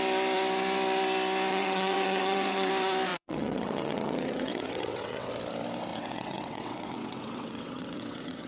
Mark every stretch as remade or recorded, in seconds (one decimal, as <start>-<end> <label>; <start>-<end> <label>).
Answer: 0.0-1.5 recorded; 1.5-2.7 remade; 2.7-3.1 recorded; 3.1-5.3 remade; 5.3-5.9 recorded; 5.9-8.5 remade